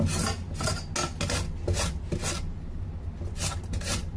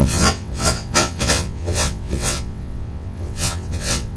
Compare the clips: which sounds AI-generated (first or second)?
second